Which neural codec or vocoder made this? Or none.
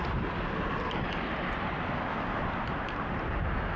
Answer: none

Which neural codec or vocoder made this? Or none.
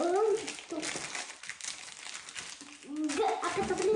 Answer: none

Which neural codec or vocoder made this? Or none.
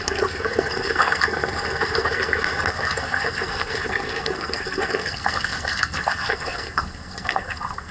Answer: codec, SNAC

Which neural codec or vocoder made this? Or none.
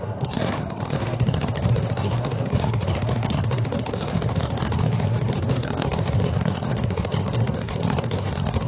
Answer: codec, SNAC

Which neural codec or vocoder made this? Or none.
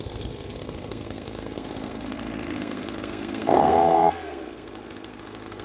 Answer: codec, SNAC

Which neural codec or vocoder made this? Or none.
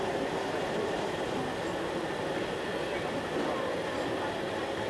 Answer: none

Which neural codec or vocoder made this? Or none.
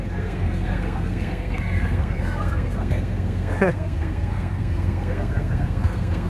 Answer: codec, SNAC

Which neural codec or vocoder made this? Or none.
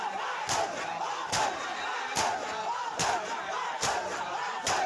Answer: none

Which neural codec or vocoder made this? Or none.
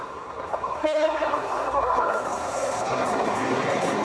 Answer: codec, SNAC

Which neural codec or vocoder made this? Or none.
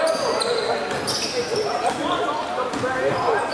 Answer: none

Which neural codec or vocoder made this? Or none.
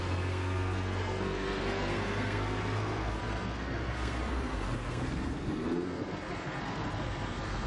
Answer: codec, SNAC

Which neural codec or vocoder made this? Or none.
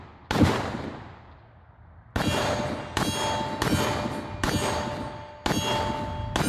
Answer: none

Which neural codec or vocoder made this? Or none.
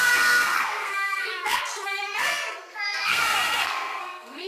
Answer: codec, SNAC